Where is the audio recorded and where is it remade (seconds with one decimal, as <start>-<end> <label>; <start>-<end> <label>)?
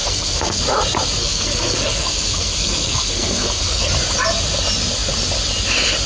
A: 0.0-0.6 remade; 0.6-1.2 recorded; 1.2-3.9 remade; 3.9-6.1 recorded